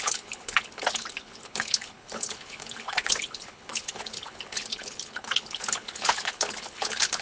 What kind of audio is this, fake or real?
fake